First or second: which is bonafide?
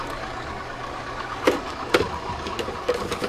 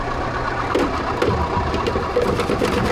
second